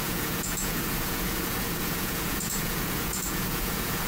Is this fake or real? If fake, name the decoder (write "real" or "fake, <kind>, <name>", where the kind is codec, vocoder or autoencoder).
fake, vocoder, Vocos